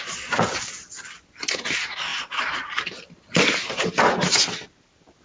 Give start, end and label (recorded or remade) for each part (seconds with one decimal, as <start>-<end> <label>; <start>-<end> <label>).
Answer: 0.0-5.2 recorded